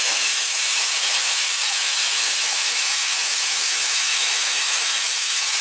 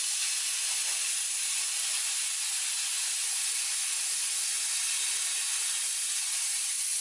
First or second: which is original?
second